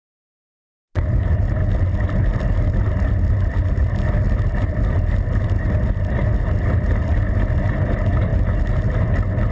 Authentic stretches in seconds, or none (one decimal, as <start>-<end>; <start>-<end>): 0.0-9.5